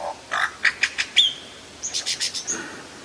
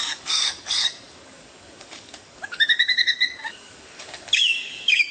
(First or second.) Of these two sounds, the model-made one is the second